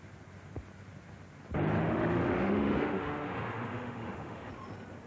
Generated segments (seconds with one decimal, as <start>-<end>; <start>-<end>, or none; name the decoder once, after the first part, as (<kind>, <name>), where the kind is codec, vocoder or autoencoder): 1.8-4.5 (autoencoder, DAC-VAE)